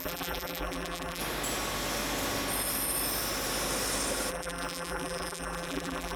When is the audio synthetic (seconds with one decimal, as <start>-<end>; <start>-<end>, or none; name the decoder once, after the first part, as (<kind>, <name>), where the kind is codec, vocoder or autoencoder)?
0.0-1.2 (vocoder, BigVGAN v2); 4.3-6.2